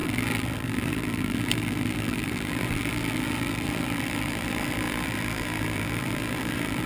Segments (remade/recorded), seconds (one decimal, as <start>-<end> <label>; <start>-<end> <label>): 0.0-6.9 remade